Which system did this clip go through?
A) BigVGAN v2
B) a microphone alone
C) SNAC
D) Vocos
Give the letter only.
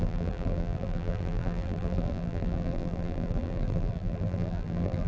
A